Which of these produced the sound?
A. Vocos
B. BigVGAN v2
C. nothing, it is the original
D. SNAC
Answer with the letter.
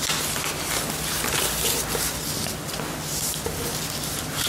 C